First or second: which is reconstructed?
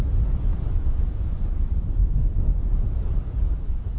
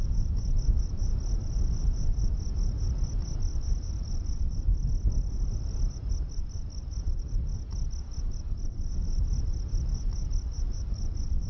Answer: first